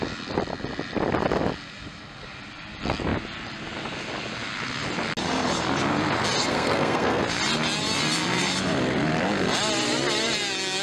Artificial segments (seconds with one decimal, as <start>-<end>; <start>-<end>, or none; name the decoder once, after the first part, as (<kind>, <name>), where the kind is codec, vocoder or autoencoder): 6.4-7.2 (codec, SNAC)